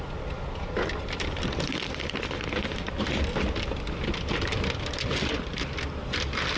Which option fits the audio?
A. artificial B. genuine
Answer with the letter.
B